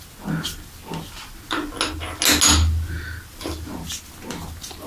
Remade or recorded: recorded